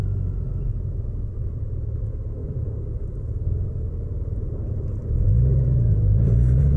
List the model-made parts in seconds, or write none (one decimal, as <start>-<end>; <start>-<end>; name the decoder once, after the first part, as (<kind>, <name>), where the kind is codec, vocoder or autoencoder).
0.7-2.0 (vocoder, BigVGAN v2); 2.4-6.8